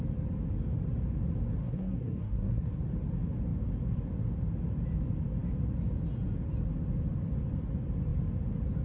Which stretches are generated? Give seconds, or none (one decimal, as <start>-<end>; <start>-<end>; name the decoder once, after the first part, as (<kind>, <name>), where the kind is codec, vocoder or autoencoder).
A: 1.6-2.8 (codec, SNAC)